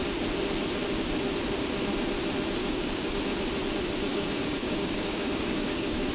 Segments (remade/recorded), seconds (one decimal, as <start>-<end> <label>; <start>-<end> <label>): 0.0-2.6 recorded; 2.6-3.2 remade; 3.2-4.1 recorded; 4.1-6.1 remade